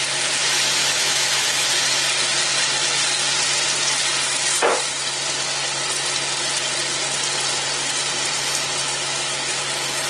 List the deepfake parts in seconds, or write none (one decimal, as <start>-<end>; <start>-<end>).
0.8-1.7; 8.9-9.6